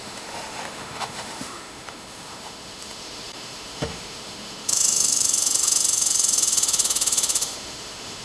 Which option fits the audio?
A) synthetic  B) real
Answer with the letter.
A